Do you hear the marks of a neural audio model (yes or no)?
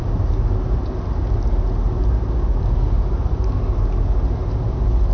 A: no